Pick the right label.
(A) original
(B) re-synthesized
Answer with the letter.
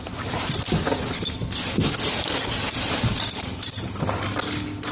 A